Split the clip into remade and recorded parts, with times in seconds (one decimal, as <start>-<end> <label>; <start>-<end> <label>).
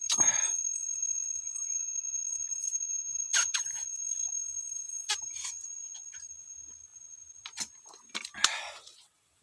0.0-5.1 remade; 5.1-8.6 recorded; 8.6-9.4 remade